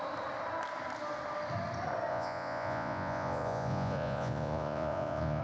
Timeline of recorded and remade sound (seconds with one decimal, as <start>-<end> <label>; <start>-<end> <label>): 0.0-2.1 recorded; 2.1-5.4 remade